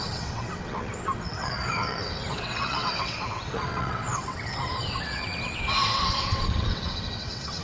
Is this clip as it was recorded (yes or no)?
no